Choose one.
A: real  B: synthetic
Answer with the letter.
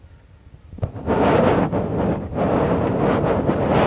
A